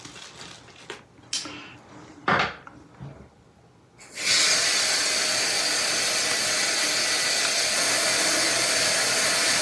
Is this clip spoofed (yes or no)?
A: no